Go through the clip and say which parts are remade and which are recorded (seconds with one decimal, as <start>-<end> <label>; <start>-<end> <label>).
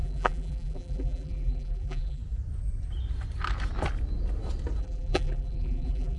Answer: 0.0-2.2 remade; 2.2-4.8 recorded; 4.8-6.2 remade